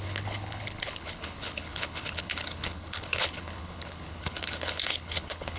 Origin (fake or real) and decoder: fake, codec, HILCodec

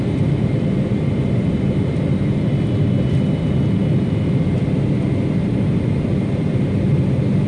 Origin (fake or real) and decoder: real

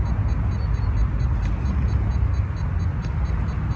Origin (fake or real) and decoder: real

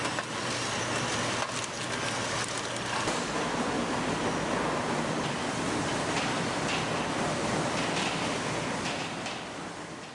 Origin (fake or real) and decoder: real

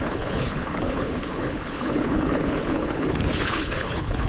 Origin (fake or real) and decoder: fake, codec, HILCodec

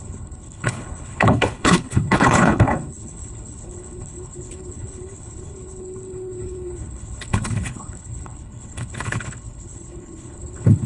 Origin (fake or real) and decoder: fake, codec, HILCodec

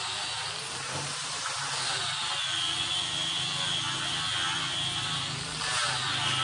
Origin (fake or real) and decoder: real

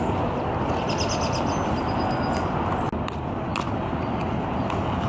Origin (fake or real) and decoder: real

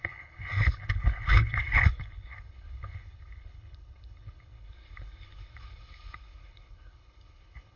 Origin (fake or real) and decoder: fake, codec, HILCodec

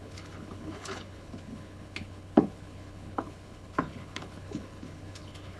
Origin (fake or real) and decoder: fake, codec, HILCodec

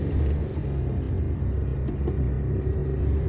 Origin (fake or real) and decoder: real